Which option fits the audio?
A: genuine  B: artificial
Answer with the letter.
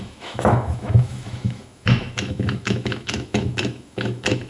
B